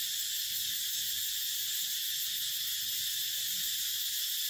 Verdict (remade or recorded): recorded